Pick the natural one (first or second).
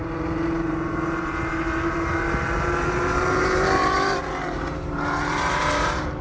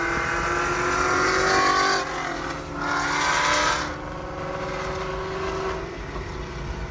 second